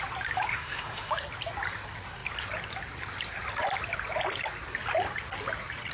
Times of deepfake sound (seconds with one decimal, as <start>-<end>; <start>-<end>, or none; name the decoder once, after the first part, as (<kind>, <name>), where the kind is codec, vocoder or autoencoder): 0.5-1.1 (autoencoder, DAC-VAE)